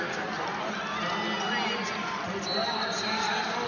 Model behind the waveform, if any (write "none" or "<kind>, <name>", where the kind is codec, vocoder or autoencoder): none